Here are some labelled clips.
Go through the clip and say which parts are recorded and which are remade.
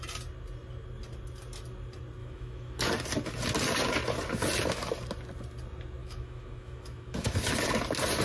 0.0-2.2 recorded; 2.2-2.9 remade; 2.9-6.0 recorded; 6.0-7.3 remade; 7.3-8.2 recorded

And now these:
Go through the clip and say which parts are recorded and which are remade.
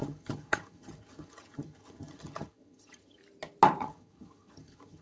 0.0-3.2 remade; 3.2-3.8 recorded; 3.8-5.0 remade